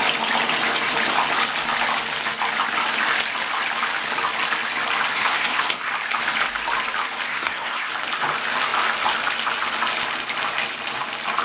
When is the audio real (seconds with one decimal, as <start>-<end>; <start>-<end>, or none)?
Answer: 0.0-5.1; 5.9-7.3; 7.9-11.4